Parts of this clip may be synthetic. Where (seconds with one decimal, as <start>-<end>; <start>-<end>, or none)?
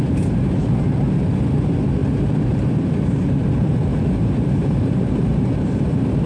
2.0-5.8